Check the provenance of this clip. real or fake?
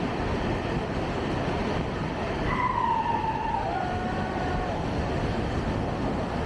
real